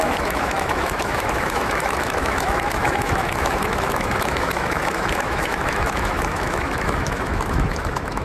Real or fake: fake